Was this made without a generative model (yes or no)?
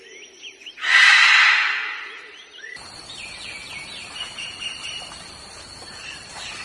no